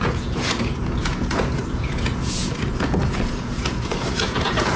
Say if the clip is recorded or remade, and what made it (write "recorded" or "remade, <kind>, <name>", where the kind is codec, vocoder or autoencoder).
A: remade, vocoder, Vocos